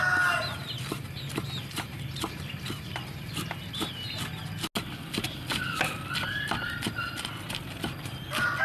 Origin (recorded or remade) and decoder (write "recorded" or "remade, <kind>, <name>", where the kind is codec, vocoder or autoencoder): recorded